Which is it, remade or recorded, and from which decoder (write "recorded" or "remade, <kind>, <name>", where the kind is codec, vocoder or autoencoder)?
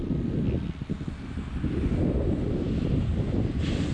recorded